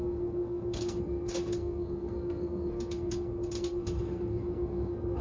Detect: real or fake fake